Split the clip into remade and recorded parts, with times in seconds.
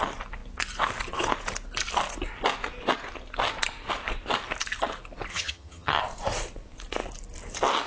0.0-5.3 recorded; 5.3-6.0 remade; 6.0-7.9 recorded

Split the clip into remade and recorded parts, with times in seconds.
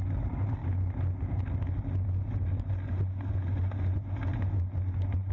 0.0-5.3 recorded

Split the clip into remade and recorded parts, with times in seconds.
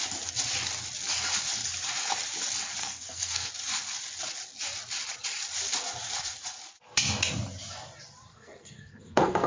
0.0-2.8 recorded; 2.8-3.5 remade; 3.5-8.3 recorded; 8.3-9.5 remade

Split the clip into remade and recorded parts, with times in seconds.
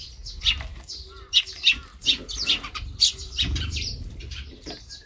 0.0-0.7 recorded; 0.7-1.4 remade; 1.4-2.0 recorded; 2.0-5.1 remade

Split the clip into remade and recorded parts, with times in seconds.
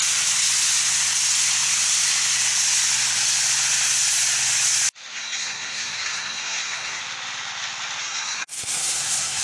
0.0-5.1 recorded; 5.1-7.0 remade; 7.0-8.0 recorded; 8.0-9.4 remade